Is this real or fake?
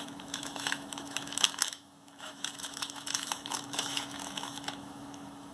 fake